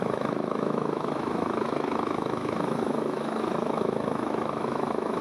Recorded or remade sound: remade